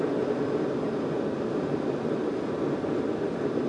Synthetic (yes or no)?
no